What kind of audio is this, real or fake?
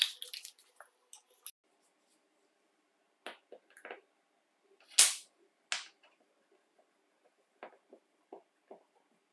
real